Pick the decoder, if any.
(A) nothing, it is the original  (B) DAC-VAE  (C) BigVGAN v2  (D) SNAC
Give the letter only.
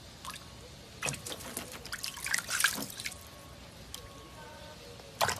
A